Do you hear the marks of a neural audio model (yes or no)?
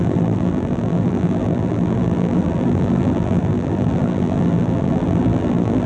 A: yes